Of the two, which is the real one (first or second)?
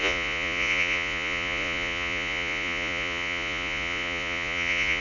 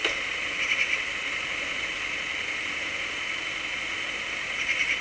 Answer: second